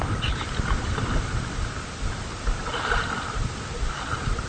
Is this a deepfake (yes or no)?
no